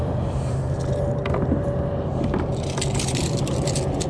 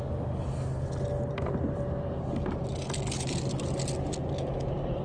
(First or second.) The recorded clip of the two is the second